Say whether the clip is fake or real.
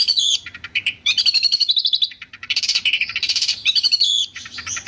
fake